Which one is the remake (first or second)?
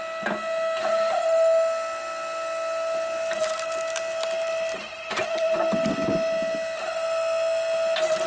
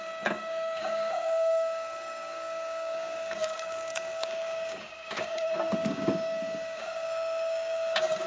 second